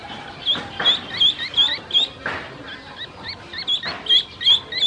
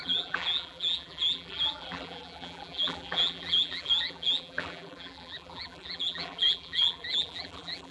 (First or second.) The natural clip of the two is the first